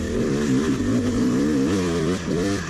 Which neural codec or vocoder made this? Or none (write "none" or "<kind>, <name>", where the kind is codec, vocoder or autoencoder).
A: vocoder, BigVGAN v2